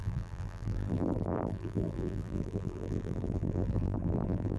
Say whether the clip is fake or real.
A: fake